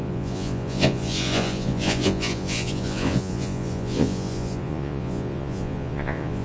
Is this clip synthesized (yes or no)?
yes